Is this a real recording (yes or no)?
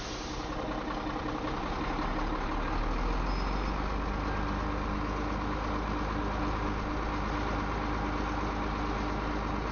yes